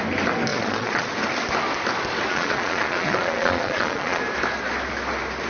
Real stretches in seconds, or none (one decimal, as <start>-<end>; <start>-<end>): 0.0-0.5; 1.1-2.3; 4.2-5.5